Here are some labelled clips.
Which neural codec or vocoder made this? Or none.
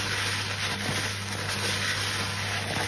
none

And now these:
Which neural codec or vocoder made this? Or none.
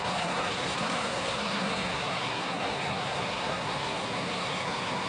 codec, SNAC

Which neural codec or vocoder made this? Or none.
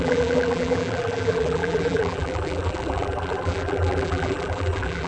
vocoder, BigVGAN v2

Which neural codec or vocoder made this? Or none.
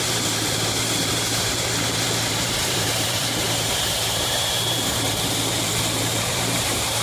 vocoder, BigVGAN v2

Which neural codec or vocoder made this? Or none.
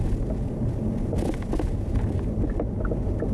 none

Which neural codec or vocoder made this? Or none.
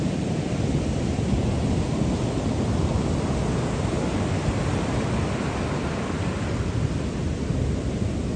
none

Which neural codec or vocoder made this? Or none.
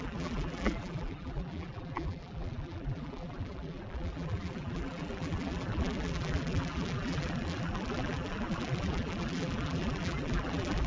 vocoder, BigVGAN v2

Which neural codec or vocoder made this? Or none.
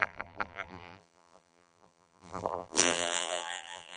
vocoder, BigVGAN v2